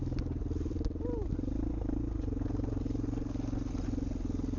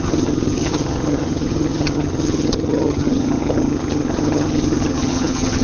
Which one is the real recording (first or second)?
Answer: first